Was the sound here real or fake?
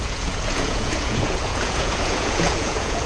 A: fake